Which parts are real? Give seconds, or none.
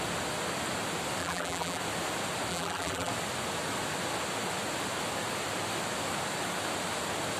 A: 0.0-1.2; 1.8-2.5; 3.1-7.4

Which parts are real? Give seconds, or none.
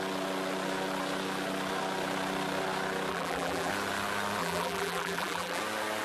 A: 0.0-3.1; 3.7-4.4; 5.6-6.0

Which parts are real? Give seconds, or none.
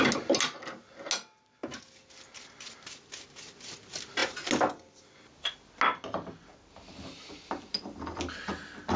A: 0.0-9.0